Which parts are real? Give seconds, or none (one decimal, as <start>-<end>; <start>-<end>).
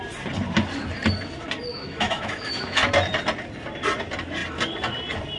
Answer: 0.0-1.7; 2.9-5.4